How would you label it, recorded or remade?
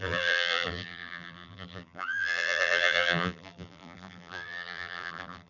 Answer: remade